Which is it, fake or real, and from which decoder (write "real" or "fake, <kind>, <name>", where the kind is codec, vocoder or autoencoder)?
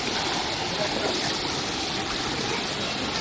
real